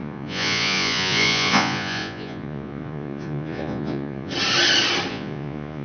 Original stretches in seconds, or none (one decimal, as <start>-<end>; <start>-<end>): 4.3-5.1